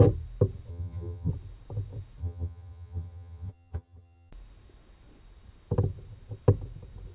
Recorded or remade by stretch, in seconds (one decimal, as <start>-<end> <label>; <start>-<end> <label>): 0.0-0.7 recorded; 0.7-1.3 remade; 1.3-2.2 recorded; 2.2-4.3 remade; 4.3-7.1 recorded